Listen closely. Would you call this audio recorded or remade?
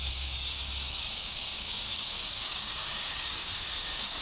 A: remade